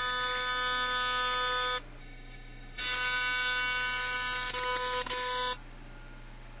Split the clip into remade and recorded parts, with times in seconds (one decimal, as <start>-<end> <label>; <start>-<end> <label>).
0.0-2.0 recorded; 2.0-2.8 remade; 2.8-6.6 recorded